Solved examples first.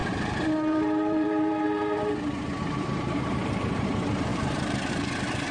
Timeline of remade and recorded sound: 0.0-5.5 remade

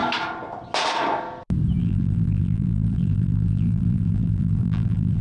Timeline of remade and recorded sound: 0.0-1.8 recorded; 1.8-5.2 remade

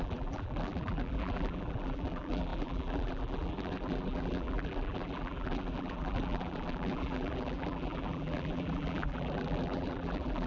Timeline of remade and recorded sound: 0.0-10.5 remade

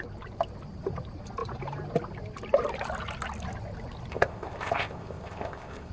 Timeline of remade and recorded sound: 0.0-4.1 recorded; 4.1-5.9 remade

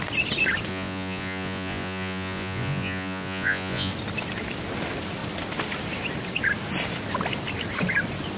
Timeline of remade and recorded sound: 0.0-0.7 recorded; 0.7-3.9 remade; 3.9-8.4 recorded

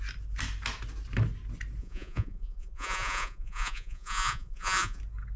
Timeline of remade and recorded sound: 0.0-1.8 recorded; 1.8-5.0 remade; 5.0-5.4 recorded

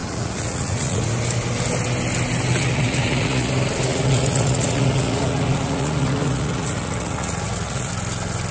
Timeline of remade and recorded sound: 0.0-1.1 remade; 1.1-2.5 recorded; 2.5-3.5 remade; 3.5-3.9 recorded; 3.9-7.9 remade; 7.9-8.5 recorded